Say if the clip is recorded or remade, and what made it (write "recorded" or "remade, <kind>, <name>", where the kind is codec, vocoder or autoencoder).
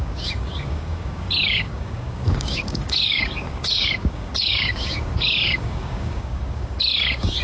remade, codec, DAC